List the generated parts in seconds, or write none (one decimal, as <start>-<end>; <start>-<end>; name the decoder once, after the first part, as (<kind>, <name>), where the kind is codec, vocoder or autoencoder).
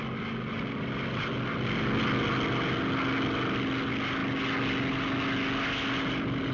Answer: none